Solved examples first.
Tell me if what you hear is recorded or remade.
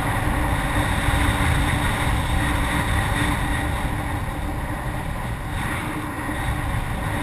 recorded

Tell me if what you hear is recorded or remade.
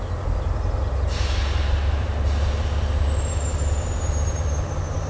recorded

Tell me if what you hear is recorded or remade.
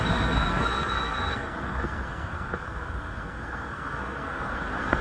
remade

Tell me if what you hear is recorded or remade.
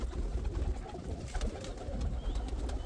recorded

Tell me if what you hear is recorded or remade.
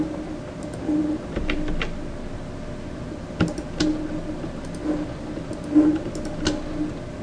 recorded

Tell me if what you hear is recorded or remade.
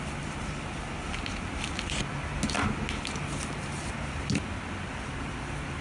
recorded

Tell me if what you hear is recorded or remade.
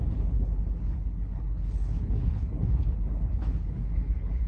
remade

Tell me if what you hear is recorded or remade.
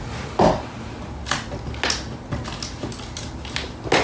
recorded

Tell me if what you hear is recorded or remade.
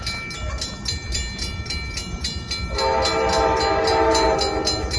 recorded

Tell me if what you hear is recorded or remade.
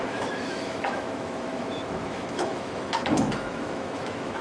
remade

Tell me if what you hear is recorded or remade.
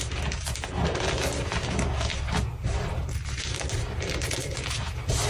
recorded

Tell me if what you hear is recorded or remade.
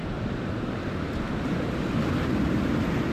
recorded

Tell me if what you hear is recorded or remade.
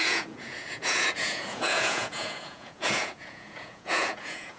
remade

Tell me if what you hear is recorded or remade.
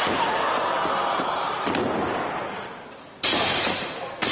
remade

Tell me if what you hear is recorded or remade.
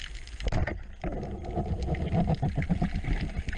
recorded